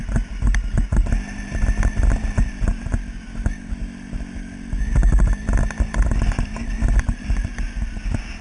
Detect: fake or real real